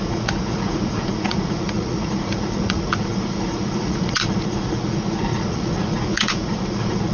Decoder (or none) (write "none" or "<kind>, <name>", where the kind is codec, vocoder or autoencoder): vocoder, Vocos